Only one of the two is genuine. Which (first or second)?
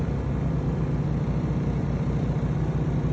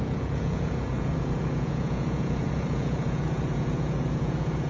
first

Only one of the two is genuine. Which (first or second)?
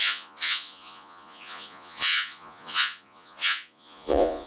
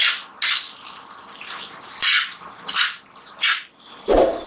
second